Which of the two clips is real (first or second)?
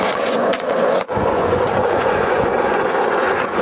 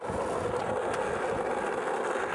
second